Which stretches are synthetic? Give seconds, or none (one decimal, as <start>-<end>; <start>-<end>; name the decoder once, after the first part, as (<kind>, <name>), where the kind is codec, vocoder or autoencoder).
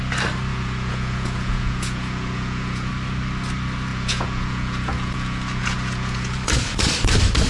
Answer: 0.5-2.9 (vocoder, Vocos); 3.9-6.3